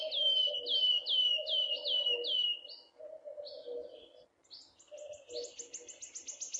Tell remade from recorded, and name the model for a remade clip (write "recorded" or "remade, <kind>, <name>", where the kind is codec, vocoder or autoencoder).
recorded